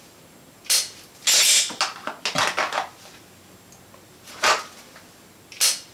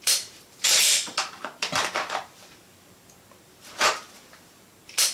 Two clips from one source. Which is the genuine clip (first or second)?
first